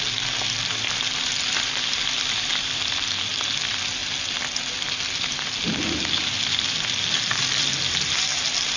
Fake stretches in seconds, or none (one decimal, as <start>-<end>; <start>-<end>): none